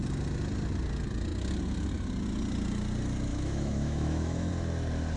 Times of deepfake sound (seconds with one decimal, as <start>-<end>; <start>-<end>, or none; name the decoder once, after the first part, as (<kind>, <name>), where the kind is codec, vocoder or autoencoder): 3.3-4.5 (autoencoder, DAC-VAE)